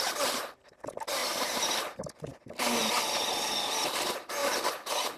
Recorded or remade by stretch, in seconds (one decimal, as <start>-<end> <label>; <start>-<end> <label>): 0.0-1.2 recorded; 1.2-2.0 remade; 2.0-5.2 recorded